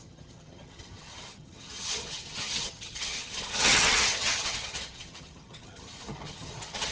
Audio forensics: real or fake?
fake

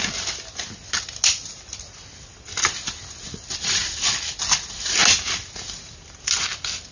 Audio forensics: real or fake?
real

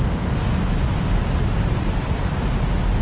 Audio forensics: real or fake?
real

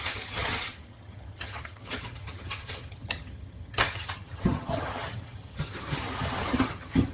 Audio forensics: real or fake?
fake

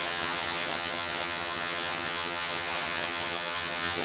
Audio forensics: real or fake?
fake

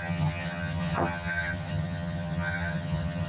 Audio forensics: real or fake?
fake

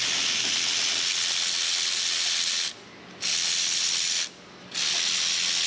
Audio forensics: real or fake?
real